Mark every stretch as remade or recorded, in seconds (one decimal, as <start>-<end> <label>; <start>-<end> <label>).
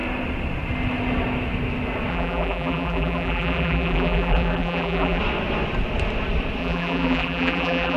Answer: 0.0-2.1 recorded; 2.1-5.2 remade; 5.2-6.6 recorded; 6.6-8.0 remade